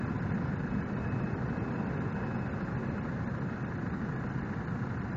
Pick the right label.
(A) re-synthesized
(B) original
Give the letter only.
B